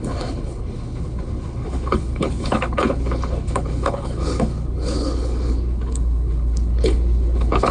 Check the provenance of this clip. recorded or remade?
remade